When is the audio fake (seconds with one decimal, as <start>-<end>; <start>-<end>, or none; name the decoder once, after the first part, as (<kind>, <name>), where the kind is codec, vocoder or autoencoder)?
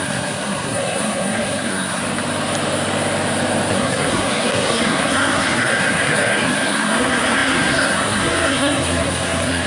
0.0-2.0 (codec, SNAC); 3.7-9.7